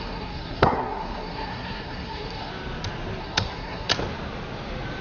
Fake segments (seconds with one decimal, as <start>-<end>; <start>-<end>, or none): 0.0-2.5; 3.2-3.9